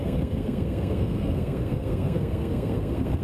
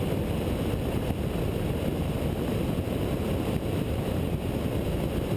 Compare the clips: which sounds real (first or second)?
second